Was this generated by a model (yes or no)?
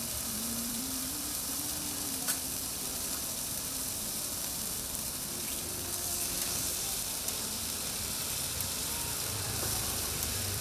yes